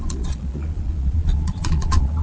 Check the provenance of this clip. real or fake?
fake